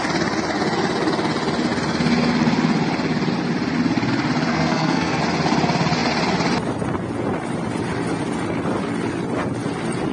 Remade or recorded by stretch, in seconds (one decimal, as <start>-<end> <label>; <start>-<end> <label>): 0.0-4.5 recorded; 4.5-5.2 remade; 5.2-10.1 recorded